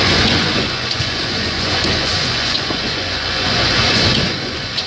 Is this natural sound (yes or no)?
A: no